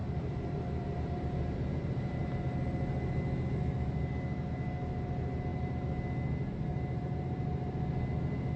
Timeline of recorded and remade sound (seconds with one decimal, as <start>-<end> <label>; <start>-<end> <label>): 0.0-2.4 remade; 2.4-5.5 recorded; 5.5-6.0 remade; 6.0-6.7 recorded; 6.7-7.9 remade; 7.9-8.6 recorded

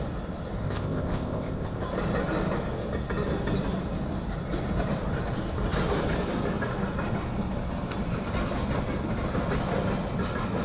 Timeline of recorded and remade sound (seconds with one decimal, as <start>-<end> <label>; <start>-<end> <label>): 0.0-0.6 recorded; 0.6-1.8 remade; 1.8-10.6 recorded

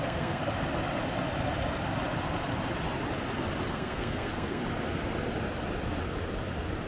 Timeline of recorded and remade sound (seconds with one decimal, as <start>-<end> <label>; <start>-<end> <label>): 0.0-0.4 remade; 0.4-3.7 recorded; 3.7-4.6 remade; 4.6-6.9 recorded

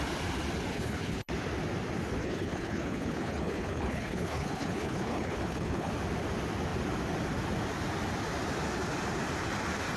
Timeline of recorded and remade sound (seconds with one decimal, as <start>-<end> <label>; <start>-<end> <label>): 0.0-0.7 recorded; 0.7-1.3 remade; 1.3-2.2 recorded; 2.2-5.9 remade; 5.9-10.0 recorded

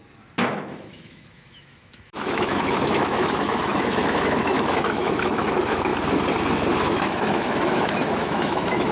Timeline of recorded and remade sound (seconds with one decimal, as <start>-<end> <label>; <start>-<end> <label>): 0.0-0.5 recorded; 0.5-5.9 remade; 5.9-6.8 recorded; 6.8-8.9 remade